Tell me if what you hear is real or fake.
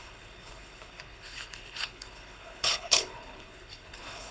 fake